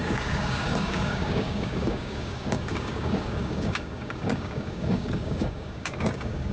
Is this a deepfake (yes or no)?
yes